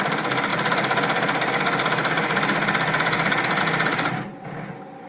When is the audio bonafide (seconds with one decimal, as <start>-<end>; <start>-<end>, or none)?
0.0-5.1